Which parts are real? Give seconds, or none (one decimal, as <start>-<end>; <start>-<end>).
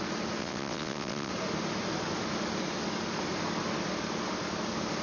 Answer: 0.0-0.4; 1.3-5.0